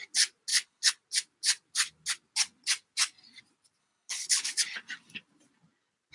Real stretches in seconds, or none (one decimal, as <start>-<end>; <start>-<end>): 0.0-0.5; 1.0-3.8; 4.5-6.1